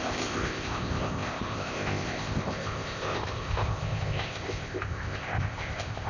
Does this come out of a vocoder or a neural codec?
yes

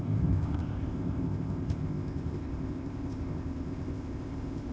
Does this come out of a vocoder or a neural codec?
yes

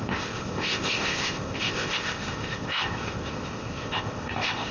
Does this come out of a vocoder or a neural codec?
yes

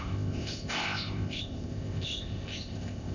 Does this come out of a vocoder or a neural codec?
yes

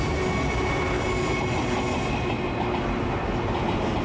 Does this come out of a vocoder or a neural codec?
no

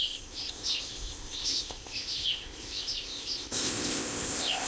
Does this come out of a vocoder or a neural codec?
yes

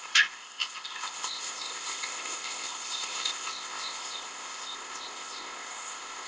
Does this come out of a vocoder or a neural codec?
yes